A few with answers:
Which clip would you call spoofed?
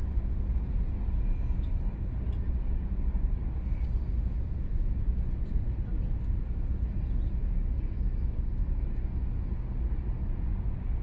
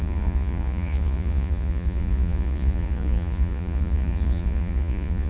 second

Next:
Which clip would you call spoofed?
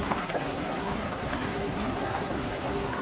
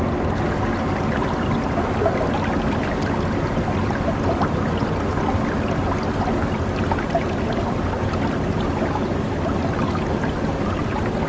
first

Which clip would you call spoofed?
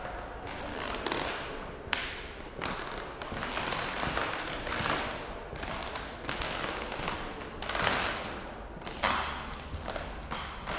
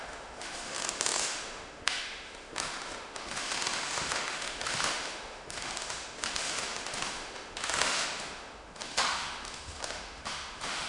second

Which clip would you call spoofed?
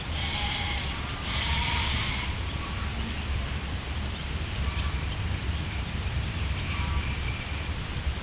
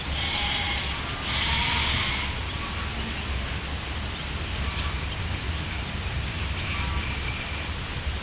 first